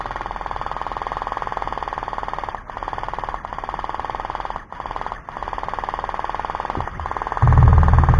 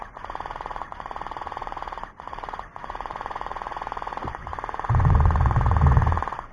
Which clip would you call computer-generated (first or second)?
second